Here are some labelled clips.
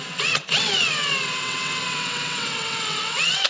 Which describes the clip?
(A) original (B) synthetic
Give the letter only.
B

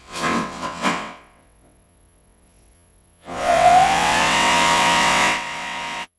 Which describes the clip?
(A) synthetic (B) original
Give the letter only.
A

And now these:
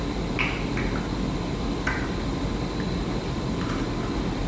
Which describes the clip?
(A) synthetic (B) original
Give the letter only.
B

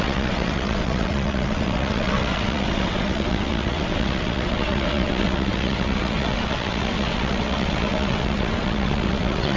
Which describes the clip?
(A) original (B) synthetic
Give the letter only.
B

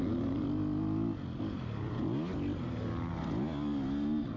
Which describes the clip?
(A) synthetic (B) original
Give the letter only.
B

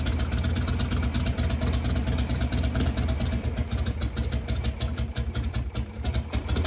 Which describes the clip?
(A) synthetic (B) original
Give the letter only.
B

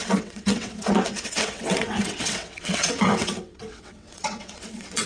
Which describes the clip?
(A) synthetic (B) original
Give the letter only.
A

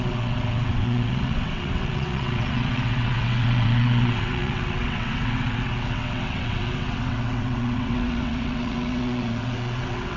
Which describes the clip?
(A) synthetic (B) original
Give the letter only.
A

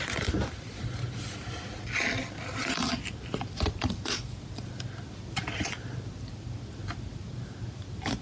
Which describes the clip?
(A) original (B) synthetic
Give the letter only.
A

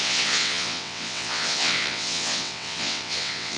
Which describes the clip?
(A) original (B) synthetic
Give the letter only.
B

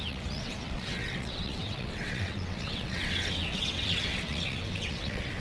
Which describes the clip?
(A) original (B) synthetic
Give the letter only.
B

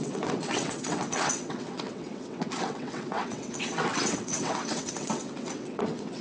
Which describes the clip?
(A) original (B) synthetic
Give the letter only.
B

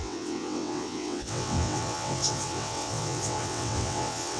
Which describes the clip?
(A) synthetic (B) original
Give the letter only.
A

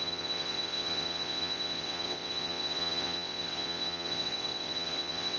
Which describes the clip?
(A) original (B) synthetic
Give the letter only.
B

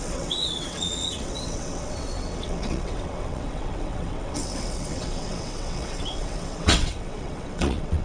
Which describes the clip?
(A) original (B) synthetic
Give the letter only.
B